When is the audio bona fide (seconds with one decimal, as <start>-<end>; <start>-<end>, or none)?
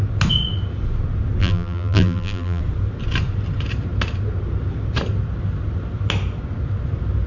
0.0-1.4; 2.6-7.3